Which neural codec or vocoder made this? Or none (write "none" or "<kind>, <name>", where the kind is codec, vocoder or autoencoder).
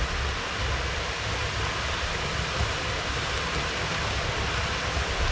none